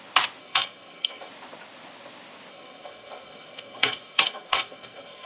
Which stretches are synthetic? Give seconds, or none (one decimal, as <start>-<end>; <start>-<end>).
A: 0.4-1.3; 2.5-5.3